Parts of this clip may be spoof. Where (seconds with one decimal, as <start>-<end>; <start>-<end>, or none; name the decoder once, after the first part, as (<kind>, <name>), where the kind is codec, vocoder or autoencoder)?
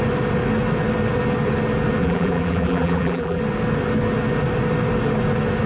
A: 2.0-3.4 (vocoder, BigVGAN v2)